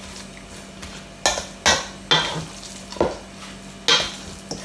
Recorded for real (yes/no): yes